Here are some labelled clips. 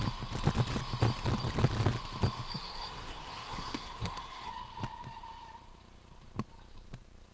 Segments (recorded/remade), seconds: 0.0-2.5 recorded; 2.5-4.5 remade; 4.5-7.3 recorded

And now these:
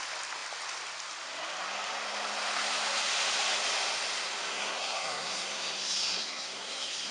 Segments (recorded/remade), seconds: 0.0-4.5 recorded; 4.5-7.1 remade